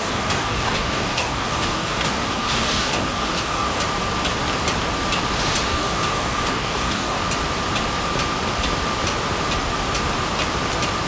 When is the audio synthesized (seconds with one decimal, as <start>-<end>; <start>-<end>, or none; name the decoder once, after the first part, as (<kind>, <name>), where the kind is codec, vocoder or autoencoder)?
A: 0.0-3.8 (codec, DAC); 5.7-7.2